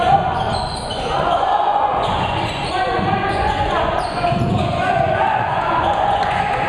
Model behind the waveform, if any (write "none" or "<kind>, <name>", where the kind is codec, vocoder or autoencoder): vocoder, Vocos